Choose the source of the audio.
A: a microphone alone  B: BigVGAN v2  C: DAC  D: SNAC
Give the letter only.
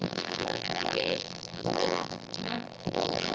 B